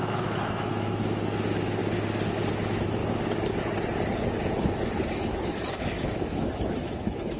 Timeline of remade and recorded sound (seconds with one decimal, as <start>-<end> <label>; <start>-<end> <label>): 0.0-1.8 remade; 1.8-2.5 recorded; 2.5-3.0 remade; 3.0-5.1 recorded; 5.1-7.4 remade